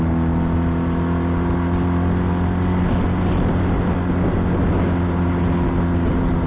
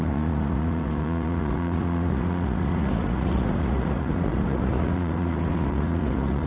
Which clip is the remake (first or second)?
second